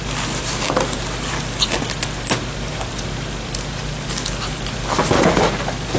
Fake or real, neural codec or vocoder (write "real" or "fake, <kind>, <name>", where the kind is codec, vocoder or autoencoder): real